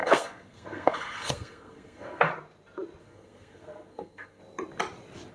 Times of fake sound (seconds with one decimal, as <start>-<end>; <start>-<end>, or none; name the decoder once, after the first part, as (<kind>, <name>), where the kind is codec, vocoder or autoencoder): 0.0-2.3 (codec, SNAC); 3.0-4.4